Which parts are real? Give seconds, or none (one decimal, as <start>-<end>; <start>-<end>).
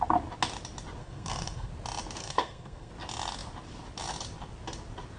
0.0-1.0; 1.7-2.2; 2.9-5.2